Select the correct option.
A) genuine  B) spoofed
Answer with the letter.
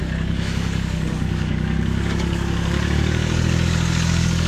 B